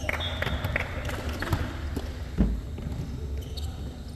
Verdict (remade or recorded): recorded